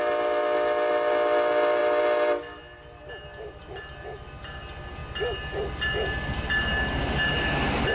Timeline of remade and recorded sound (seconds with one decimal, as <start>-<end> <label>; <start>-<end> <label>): 0.0-7.9 recorded